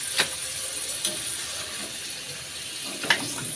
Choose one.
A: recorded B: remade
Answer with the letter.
A